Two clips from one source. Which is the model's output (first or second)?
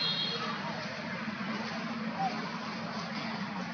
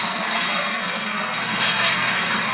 second